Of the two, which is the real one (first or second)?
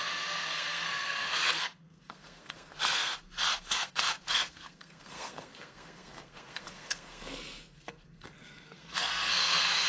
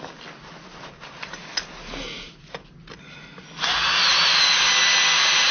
second